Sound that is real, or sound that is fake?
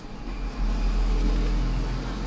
real